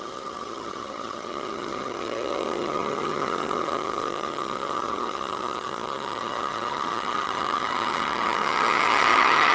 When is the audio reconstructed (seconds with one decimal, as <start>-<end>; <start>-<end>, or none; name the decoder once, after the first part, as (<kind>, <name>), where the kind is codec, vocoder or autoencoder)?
0.0-9.5 (vocoder, HiFi-GAN)